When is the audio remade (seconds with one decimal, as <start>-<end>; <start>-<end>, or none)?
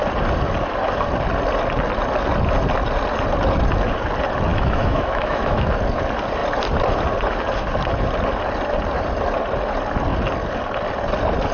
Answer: 4.5-5.7